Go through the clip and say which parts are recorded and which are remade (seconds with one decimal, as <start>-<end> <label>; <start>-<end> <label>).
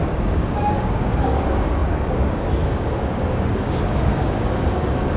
0.0-5.2 remade